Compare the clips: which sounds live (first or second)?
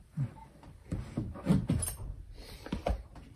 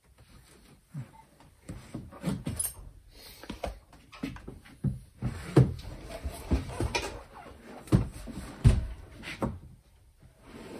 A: second